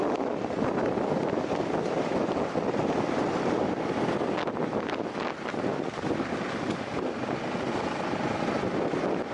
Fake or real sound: real